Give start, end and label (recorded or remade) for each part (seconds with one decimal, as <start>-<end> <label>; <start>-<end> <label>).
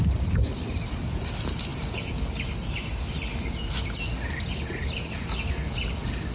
0.0-6.3 recorded